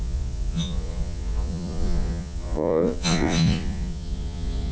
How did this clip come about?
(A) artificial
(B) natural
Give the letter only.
A